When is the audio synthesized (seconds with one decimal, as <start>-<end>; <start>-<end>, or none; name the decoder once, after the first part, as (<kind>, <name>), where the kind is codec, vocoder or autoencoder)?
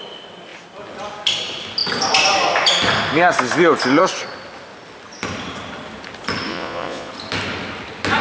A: 6.5-7.1 (vocoder, Vocos)